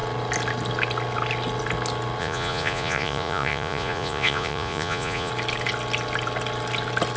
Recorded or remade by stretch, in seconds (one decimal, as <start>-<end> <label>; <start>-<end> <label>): 0.0-2.2 recorded; 2.2-5.3 remade; 5.3-7.2 recorded